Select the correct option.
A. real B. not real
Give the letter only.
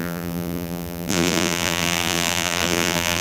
B